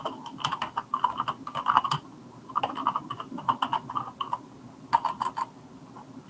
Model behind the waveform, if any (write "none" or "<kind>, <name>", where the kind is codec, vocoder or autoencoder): none